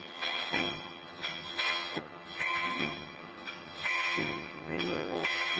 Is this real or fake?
fake